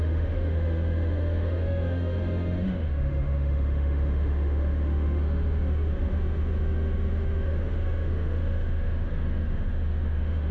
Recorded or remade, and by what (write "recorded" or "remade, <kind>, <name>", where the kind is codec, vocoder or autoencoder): remade, autoencoder, DAC-VAE